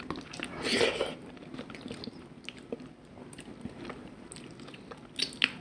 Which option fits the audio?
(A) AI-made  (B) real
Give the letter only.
B